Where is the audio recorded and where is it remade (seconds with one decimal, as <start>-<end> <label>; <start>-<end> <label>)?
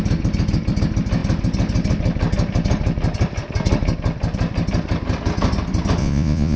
0.0-6.0 recorded; 6.0-6.6 remade